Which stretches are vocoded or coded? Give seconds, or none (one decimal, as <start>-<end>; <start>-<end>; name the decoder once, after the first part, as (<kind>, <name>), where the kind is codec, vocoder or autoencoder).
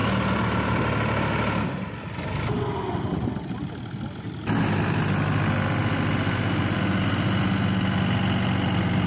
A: none